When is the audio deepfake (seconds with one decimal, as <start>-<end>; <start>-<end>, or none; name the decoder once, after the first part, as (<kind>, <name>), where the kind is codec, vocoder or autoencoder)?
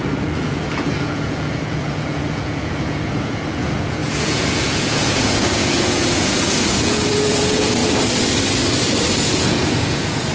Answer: 0.0-7.8 (vocoder, Vocos); 9.1-10.3